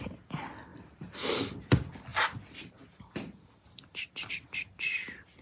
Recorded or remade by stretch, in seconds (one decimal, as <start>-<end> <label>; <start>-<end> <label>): 0.0-5.4 recorded

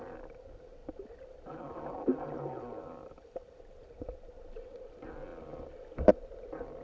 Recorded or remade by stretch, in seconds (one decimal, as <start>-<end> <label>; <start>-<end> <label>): 0.0-6.8 recorded

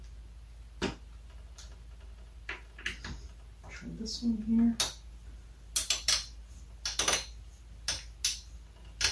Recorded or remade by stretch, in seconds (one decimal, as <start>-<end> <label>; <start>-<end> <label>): 0.0-9.1 recorded